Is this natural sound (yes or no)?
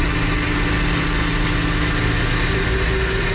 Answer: yes